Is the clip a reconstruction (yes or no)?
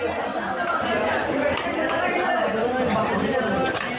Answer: no